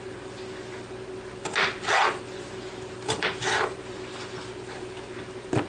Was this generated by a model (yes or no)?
no